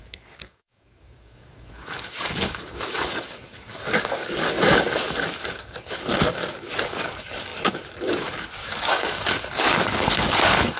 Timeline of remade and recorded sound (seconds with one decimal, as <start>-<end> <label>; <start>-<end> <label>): 0.0-10.8 remade